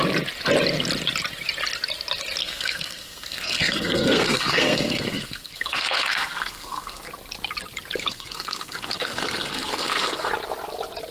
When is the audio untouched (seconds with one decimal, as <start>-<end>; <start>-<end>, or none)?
0.0-2.4; 7.1-8.0; 10.3-11.1